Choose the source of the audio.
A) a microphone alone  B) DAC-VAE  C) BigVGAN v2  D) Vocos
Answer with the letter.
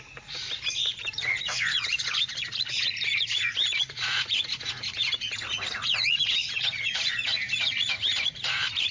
D